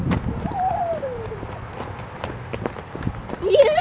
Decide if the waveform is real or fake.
real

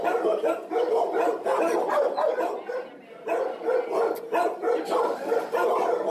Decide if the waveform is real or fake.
real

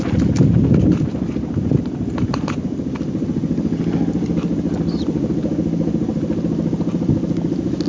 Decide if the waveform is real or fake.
real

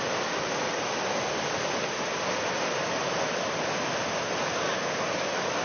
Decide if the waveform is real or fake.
real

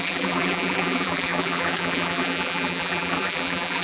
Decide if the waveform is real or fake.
fake